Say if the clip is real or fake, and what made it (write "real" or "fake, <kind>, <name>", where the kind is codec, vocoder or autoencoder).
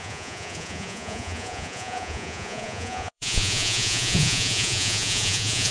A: fake, vocoder, Vocos